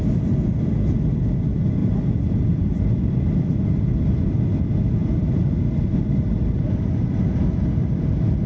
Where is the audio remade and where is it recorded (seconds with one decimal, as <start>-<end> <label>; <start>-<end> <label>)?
0.0-8.5 recorded